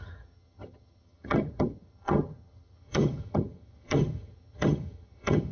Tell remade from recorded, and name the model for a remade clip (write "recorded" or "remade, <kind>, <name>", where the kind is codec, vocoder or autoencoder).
remade, vocoder, HiFi-GAN